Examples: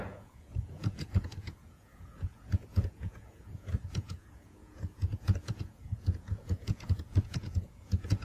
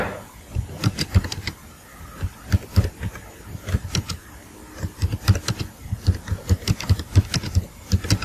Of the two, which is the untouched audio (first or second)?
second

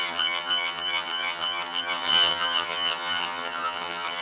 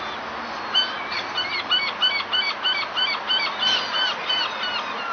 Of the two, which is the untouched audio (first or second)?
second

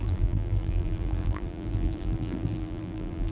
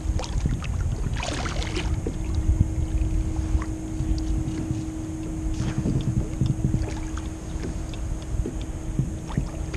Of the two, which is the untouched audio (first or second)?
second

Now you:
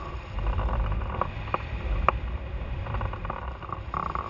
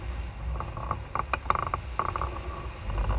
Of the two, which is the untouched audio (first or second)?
second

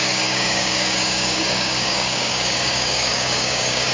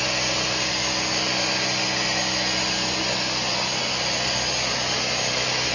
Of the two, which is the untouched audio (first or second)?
second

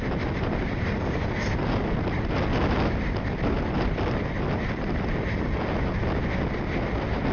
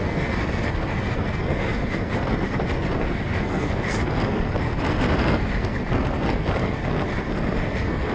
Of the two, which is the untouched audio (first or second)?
first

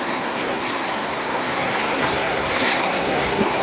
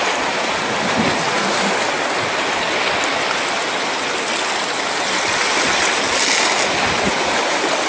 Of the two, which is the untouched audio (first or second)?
second